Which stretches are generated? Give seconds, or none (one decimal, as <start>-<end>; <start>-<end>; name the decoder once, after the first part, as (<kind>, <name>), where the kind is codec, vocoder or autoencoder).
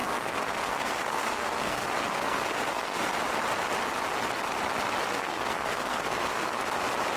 0.0-3.1 (codec, SNAC); 5.1-6.6